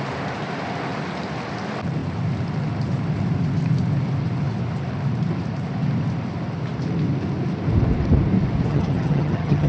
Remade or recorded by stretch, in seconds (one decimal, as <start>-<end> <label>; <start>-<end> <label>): 0.0-8.7 recorded; 8.7-9.7 remade